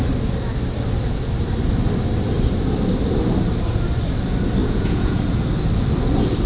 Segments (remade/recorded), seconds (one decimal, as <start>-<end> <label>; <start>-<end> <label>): 0.0-4.6 recorded; 4.6-5.2 remade; 5.2-6.5 recorded